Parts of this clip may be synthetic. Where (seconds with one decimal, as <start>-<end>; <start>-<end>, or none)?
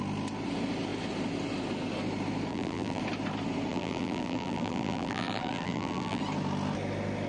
2.5-3.0; 3.7-6.2